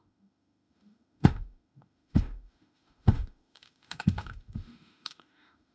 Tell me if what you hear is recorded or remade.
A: remade